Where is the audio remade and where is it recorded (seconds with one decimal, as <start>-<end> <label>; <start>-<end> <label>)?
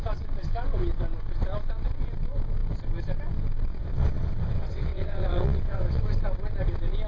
0.0-3.7 recorded; 3.7-6.0 remade; 6.0-7.1 recorded